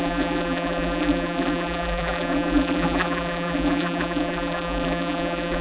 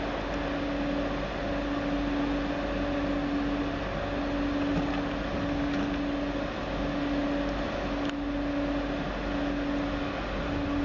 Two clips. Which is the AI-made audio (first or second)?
first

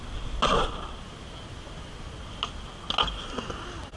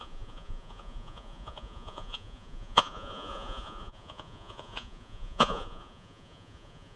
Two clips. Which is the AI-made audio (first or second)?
second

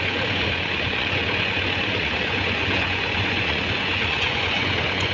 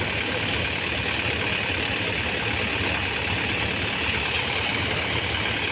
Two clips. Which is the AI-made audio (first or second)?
first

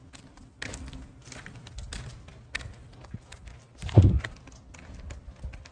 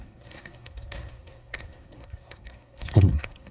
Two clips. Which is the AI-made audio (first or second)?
second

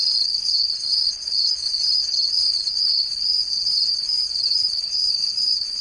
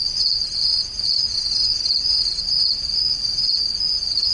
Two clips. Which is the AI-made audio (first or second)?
first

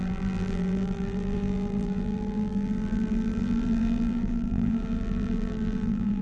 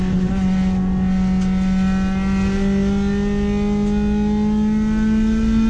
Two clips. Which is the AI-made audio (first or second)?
first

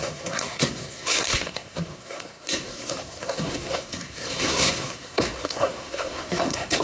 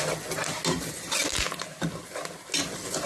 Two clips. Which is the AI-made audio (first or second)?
first